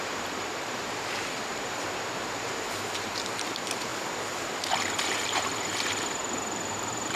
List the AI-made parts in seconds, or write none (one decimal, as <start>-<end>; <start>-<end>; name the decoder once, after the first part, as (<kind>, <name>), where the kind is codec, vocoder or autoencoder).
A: 0.0-3.9 (vocoder, BigVGAN v2); 5.0-7.2